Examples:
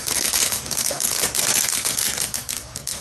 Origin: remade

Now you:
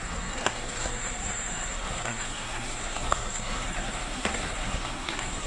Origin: remade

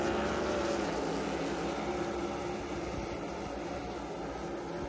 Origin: recorded